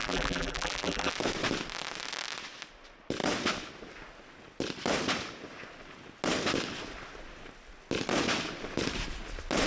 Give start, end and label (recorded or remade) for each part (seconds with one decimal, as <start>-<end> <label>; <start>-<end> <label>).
0.0-1.1 remade; 1.1-9.7 recorded